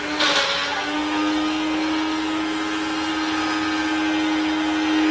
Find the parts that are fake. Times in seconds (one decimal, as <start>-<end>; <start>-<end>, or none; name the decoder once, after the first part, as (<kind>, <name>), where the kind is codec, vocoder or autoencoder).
none